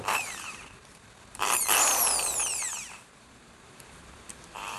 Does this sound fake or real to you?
fake